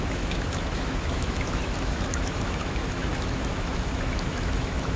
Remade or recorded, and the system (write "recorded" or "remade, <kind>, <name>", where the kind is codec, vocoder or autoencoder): remade, autoencoder, DAC-VAE